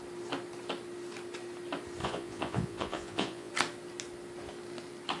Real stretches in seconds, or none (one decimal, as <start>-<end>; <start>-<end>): 0.0-2.0; 3.5-5.2